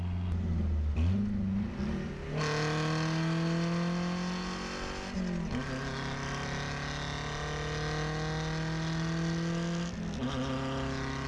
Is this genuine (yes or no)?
yes